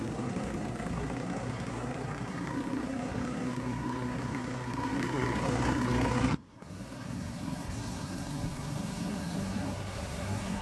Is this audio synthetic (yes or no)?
yes